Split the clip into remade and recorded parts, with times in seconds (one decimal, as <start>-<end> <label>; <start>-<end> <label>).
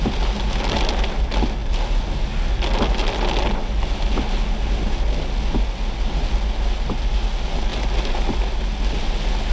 0.0-9.5 recorded